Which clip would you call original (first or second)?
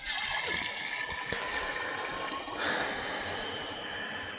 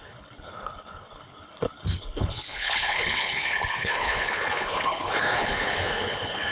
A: first